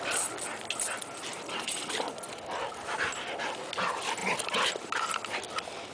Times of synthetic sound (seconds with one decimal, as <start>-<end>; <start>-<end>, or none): 1.3-3.5; 4.2-4.7